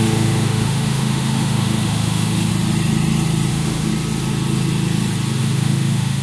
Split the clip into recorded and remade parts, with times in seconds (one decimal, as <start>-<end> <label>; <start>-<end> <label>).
0.0-2.5 remade; 2.5-3.5 recorded; 3.5-3.9 remade; 3.9-5.4 recorded; 5.4-6.2 remade